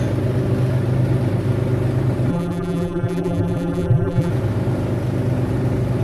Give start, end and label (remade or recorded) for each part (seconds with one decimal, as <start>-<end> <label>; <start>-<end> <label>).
0.0-2.3 recorded; 2.3-4.3 remade; 4.3-6.0 recorded